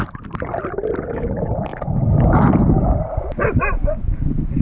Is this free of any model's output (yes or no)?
yes